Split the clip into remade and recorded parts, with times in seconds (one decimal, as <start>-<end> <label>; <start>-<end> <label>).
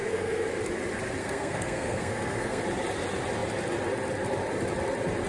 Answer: 0.0-0.5 remade; 0.5-1.2 recorded; 1.2-2.6 remade; 2.6-5.3 recorded